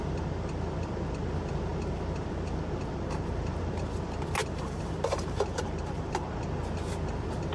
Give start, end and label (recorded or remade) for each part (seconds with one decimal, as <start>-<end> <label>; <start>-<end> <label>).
0.0-4.4 recorded; 4.4-6.3 remade; 6.3-7.5 recorded